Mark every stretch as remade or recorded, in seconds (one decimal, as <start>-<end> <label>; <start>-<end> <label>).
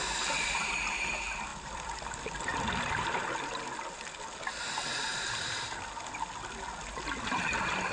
0.0-1.5 recorded; 1.5-2.6 remade; 2.6-5.1 recorded; 5.1-5.7 remade; 5.7-7.9 recorded